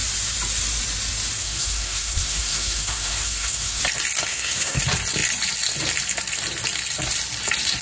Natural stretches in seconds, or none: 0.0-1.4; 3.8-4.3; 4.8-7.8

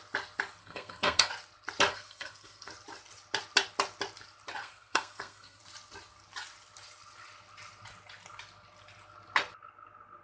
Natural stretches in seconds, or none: 0.0-0.6; 1.3-1.9; 2.7-4.6; 5.6-10.2

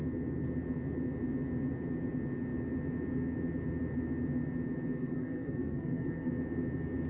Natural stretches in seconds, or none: 0.0-5.0; 6.3-7.1

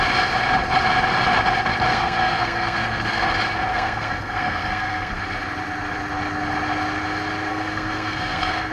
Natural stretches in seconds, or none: 0.0-1.9; 3.3-3.7; 5.2-7.5

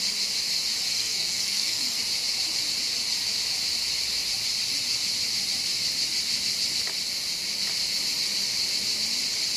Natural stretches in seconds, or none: 0.0-0.9; 2.0-9.6

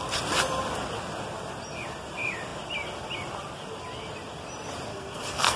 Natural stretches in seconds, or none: 0.0-4.9

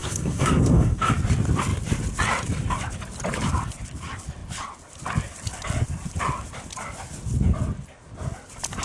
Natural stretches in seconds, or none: 1.1-8.8